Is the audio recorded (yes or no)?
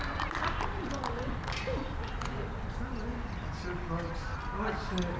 yes